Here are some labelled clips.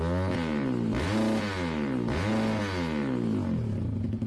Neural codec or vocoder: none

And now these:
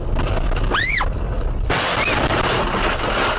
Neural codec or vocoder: none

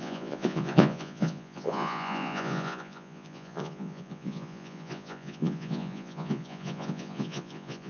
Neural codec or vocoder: vocoder, Vocos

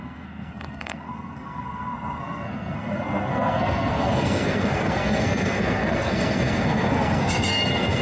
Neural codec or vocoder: codec, SNAC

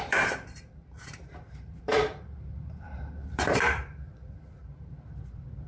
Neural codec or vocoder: vocoder, BigVGAN v2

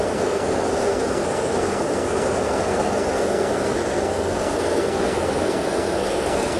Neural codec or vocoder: codec, SNAC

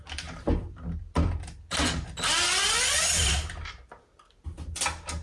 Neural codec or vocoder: none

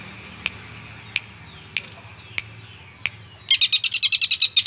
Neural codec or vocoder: none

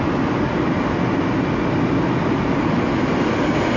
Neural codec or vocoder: none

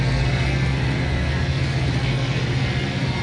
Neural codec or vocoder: codec, SNAC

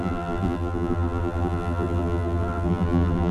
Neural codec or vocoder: vocoder, BigVGAN v2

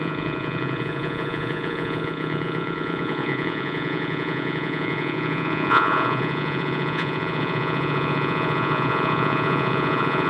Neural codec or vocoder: vocoder, Vocos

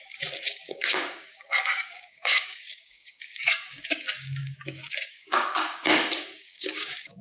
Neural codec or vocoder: codec, DAC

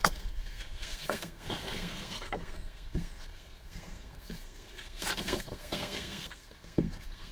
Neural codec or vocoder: codec, SNAC